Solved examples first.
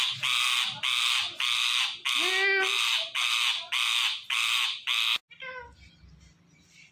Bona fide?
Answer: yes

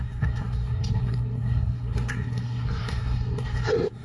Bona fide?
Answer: no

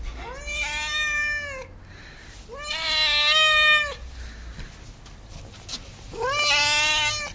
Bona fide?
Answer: yes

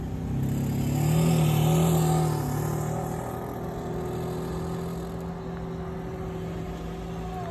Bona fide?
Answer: yes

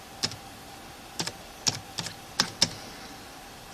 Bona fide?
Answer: yes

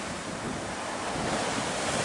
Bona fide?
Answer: no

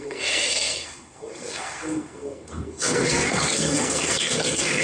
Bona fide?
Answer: no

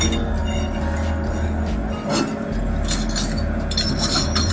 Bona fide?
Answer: yes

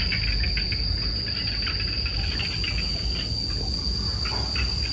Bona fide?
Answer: yes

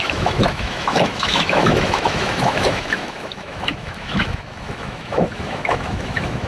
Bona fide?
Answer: no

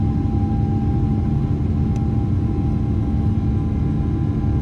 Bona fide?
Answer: yes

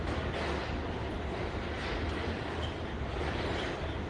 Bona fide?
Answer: yes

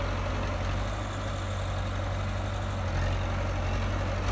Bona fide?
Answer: yes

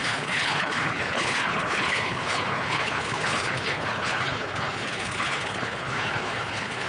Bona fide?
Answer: no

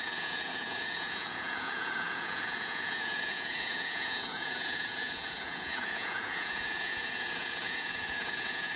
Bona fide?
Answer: no